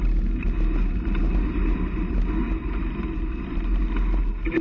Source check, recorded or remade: recorded